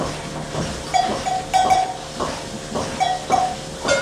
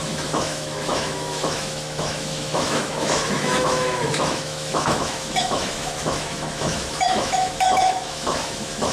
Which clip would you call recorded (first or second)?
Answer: first